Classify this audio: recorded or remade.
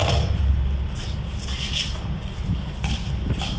recorded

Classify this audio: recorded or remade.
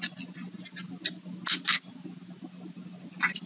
recorded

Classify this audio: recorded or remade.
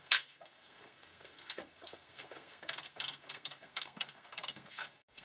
remade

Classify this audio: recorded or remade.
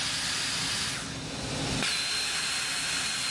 recorded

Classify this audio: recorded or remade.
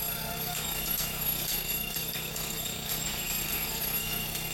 remade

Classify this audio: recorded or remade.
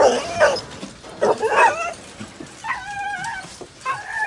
recorded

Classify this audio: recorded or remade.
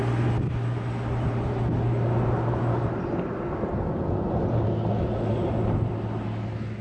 recorded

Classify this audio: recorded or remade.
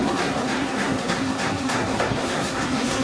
remade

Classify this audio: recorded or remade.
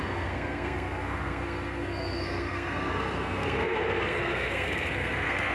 remade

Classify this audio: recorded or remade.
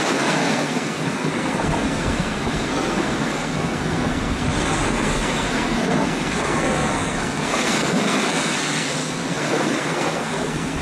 remade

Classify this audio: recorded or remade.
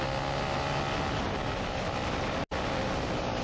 recorded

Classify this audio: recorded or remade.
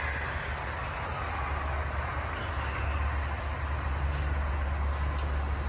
recorded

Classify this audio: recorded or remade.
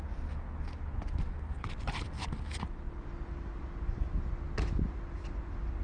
recorded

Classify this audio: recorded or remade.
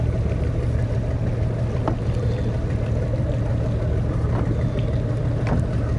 recorded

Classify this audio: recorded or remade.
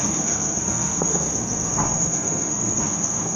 remade